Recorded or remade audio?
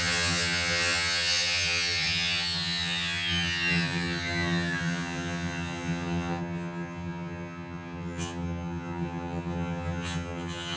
remade